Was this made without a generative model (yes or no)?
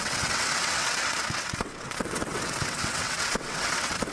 no